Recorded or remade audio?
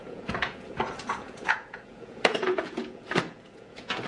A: remade